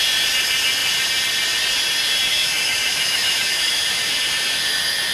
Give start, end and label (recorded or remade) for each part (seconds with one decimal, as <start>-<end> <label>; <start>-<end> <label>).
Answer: 0.0-2.3 recorded; 2.3-4.1 remade; 4.1-5.1 recorded